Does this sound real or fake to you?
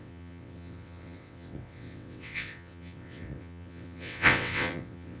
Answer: fake